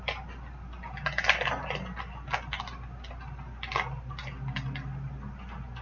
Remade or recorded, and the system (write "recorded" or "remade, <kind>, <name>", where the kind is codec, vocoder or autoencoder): recorded